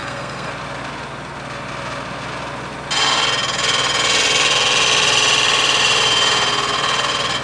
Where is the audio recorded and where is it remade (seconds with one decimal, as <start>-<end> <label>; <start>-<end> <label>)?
0.0-0.5 remade; 0.5-7.4 recorded